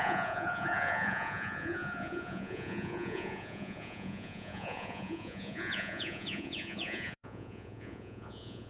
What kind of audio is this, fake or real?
fake